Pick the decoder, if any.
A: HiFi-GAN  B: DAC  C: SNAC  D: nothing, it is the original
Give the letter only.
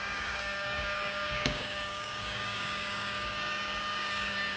B